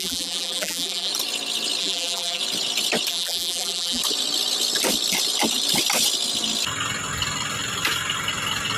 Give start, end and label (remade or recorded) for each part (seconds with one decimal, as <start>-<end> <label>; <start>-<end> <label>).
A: 0.0-1.1 remade; 1.1-1.8 recorded; 1.8-2.4 remade; 2.4-3.1 recorded; 3.1-4.0 remade; 4.0-8.8 recorded